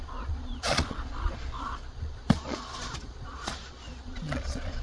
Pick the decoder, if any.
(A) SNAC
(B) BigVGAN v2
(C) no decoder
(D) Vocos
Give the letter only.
D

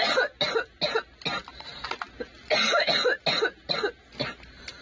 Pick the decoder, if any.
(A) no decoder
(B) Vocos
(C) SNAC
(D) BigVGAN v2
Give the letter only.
A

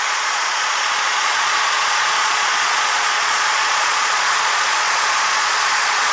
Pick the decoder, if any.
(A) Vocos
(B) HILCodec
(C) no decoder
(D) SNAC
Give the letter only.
A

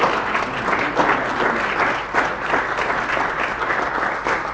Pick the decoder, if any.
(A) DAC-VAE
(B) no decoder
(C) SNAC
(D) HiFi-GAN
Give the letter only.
B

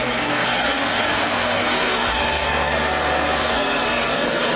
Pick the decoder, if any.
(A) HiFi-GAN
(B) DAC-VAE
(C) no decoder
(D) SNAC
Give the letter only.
D